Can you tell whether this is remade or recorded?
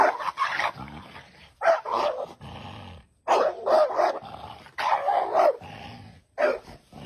recorded